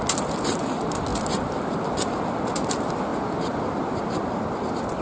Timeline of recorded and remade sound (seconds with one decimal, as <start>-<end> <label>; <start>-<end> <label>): 0.0-5.0 recorded